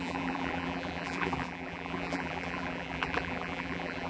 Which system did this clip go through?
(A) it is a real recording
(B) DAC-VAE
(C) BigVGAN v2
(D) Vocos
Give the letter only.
C